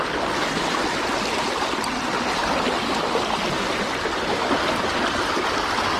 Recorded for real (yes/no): yes